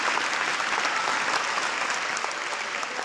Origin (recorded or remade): recorded